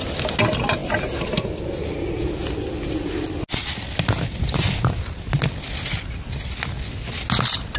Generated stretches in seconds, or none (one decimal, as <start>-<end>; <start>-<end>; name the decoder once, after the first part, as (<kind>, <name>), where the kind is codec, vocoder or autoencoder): none